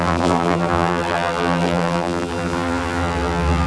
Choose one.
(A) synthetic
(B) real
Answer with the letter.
A